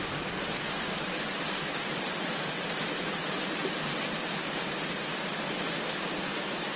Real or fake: real